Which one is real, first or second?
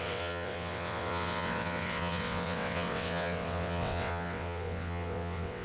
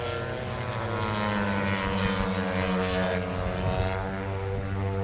second